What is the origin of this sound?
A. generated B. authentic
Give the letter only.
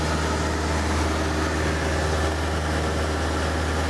B